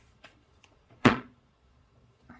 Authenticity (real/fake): fake